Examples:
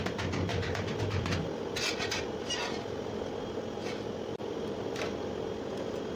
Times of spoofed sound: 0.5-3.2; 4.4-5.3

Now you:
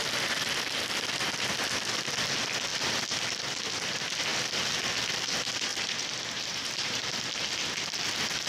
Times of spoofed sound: 5.7-7.0

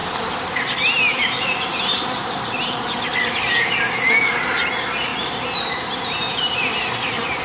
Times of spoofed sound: 0.0-0.6; 1.1-4.2; 5.1-7.4

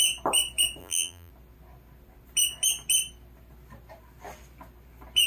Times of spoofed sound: 0.8-1.3

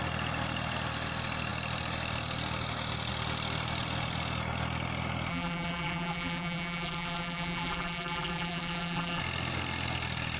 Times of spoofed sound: 5.3-9.2